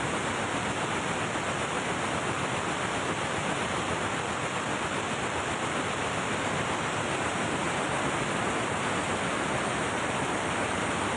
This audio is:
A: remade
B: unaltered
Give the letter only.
B